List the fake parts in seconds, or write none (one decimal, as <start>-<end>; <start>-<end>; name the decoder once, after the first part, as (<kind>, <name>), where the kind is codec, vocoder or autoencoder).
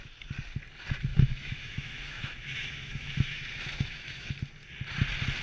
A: 1.1-4.3 (autoencoder, DAC-VAE)